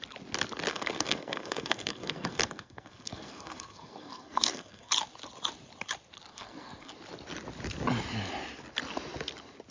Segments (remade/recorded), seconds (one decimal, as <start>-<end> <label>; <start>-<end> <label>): 0.0-0.7 recorded; 0.7-4.9 remade; 4.9-6.3 recorded; 6.3-6.9 remade; 6.9-9.7 recorded